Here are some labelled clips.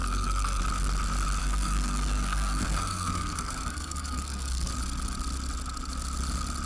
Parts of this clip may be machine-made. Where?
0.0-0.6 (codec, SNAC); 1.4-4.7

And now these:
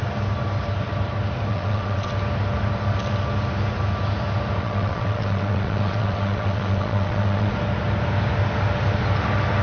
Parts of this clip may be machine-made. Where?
1.5-2.1 (vocoder, WaveNeXt); 4.6-7.5

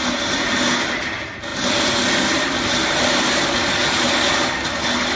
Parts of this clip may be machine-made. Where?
none

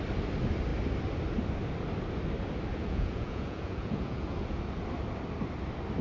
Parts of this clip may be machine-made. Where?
2.7-4.6 (vocoder, Vocos)

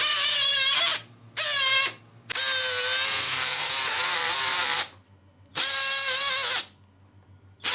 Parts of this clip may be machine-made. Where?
3.2-3.7 (codec, SNAC)

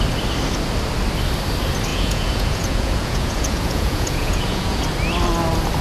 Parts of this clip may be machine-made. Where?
1.9-4.8 (vocoder, Vocos)